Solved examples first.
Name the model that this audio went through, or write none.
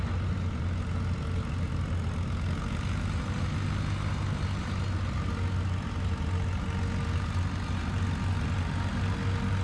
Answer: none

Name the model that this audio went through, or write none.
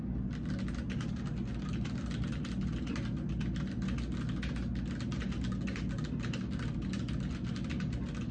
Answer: none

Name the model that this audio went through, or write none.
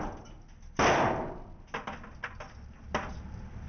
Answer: none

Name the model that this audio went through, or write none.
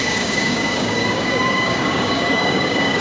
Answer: codec, DAC